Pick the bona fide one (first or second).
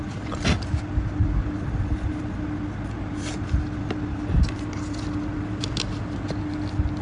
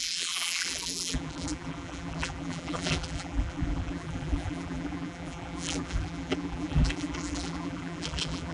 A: first